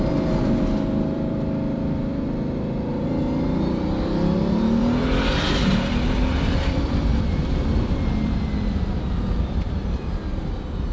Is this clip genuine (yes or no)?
no